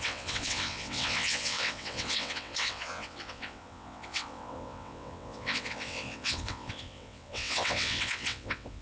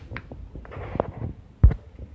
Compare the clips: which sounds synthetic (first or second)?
first